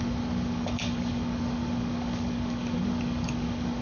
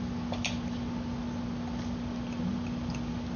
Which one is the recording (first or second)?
second